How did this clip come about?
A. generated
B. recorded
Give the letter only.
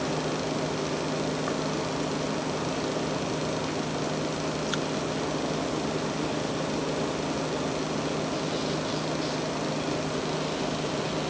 B